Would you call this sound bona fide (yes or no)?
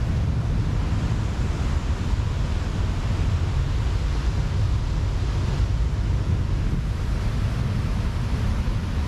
yes